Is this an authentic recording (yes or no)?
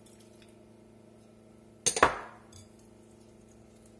yes